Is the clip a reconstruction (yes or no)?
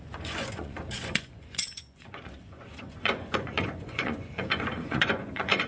yes